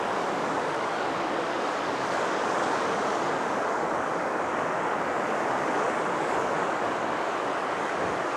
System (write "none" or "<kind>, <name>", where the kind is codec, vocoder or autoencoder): codec, DAC